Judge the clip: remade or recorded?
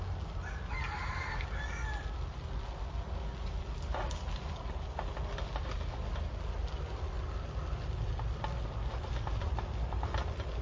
recorded